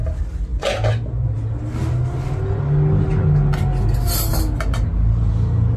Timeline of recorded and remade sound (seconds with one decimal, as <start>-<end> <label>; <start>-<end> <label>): 0.0-5.8 recorded